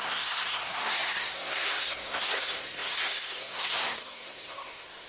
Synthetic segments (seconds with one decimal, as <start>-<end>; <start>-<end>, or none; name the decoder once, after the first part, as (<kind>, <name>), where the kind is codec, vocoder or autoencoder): 0.0-5.1 (codec, SNAC)